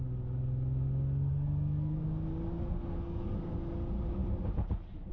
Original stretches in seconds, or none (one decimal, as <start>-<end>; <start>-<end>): 0.0-1.3; 2.0-2.5; 3.7-5.1